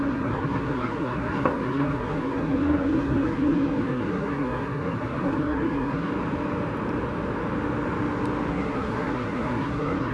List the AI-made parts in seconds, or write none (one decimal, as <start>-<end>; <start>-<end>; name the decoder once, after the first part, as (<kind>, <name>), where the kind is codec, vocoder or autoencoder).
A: 0.0-6.1 (codec, SNAC); 8.5-10.1